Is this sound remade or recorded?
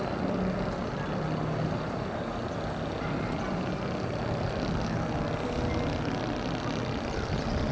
recorded